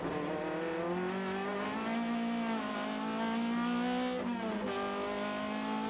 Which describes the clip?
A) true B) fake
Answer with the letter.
A